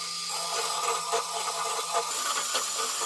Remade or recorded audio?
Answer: recorded